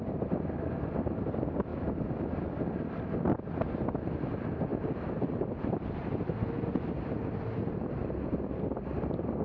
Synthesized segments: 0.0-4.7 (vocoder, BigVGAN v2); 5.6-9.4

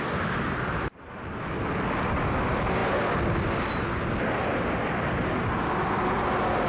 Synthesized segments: 0.7-1.3 (vocoder, BigVGAN v2)

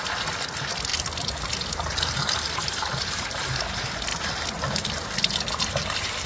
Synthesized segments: 0.0-0.9 (vocoder, BigVGAN v2); 2.1-6.3

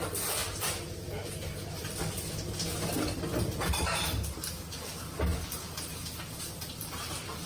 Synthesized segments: none

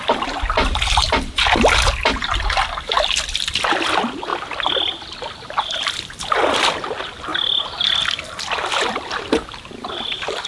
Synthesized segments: none